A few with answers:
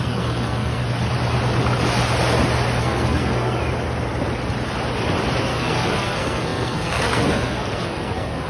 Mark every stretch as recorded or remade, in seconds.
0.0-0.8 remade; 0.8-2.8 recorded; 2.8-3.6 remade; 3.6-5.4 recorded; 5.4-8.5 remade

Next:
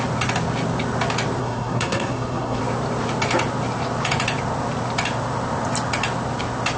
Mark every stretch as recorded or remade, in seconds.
0.0-1.4 recorded; 1.4-2.6 remade; 2.6-6.8 recorded

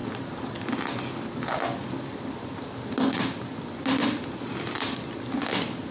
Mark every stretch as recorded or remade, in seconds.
0.0-5.9 recorded

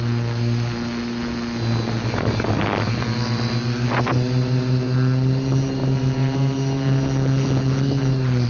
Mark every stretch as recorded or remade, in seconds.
0.0-8.5 recorded

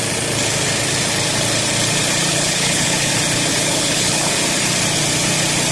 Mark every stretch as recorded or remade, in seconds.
0.0-2.3 recorded; 2.3-3.1 remade; 3.1-3.5 recorded; 3.5-4.3 remade; 4.3-5.7 recorded

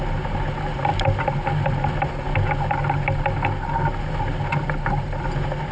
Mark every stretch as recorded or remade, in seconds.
0.0-5.7 recorded

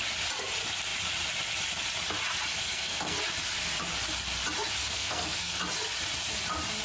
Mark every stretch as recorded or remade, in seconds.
0.0-2.5 recorded; 2.5-3.2 remade; 3.2-4.8 recorded; 4.8-5.6 remade; 5.6-6.8 recorded

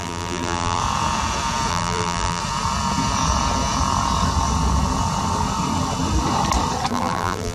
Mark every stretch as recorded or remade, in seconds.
0.0-0.8 remade; 0.8-1.7 recorded; 1.7-2.4 remade; 2.4-6.9 recorded; 6.9-7.5 remade